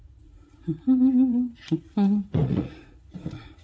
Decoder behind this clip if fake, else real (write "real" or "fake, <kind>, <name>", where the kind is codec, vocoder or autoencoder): fake, vocoder, Vocos